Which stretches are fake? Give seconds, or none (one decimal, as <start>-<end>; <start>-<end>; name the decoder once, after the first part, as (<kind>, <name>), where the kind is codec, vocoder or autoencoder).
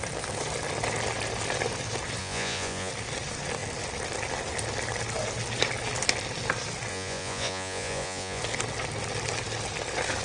2.2-2.9 (vocoder, Vocos); 6.9-8.4